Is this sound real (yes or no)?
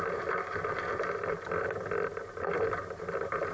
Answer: yes